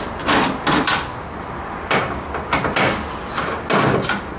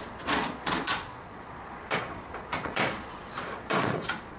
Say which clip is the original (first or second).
first